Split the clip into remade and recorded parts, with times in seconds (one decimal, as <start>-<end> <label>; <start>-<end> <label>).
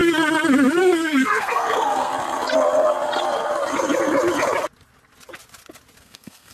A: 0.0-0.8 recorded; 0.8-2.1 remade; 2.1-6.0 recorded; 6.0-6.5 remade